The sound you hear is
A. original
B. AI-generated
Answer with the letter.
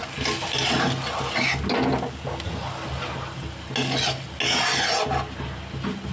A